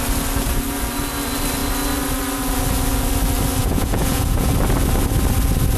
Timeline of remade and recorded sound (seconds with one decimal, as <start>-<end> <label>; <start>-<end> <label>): 0.0-3.6 recorded; 3.6-4.5 remade; 4.5-5.8 recorded

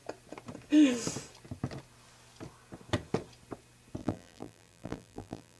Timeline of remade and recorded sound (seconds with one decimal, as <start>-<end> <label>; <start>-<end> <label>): 0.0-4.0 recorded; 4.0-5.6 remade

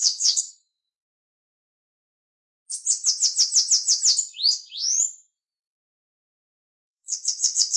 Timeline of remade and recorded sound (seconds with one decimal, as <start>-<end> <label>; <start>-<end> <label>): 0.0-1.3 remade; 1.3-6.0 recorded; 6.0-7.8 remade

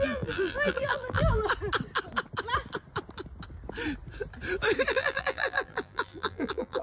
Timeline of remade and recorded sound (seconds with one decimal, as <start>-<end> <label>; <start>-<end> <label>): 0.0-1.4 remade; 1.4-4.9 recorded; 4.9-6.8 remade

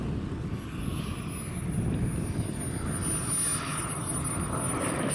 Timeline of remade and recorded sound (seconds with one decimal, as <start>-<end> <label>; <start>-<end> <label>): 0.0-5.1 recorded

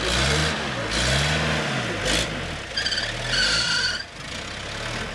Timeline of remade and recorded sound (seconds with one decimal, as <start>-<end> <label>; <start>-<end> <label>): 0.0-5.1 recorded

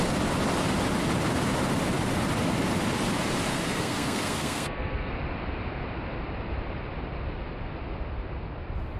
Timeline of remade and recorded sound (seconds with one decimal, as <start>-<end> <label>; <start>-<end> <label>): 0.0-3.5 recorded; 3.5-5.1 remade; 5.1-9.0 recorded

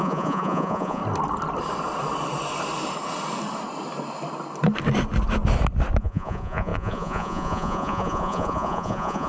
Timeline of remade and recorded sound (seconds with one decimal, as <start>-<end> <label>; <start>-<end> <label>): 0.0-1.0 remade; 1.0-6.0 recorded; 6.0-9.3 remade